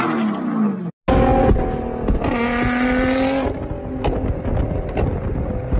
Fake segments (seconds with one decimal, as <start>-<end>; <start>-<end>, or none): none